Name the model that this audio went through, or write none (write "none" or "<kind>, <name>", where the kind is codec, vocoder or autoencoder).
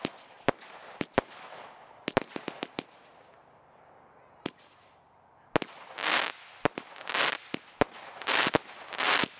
none